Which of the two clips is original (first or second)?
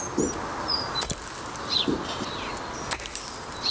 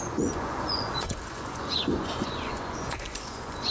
first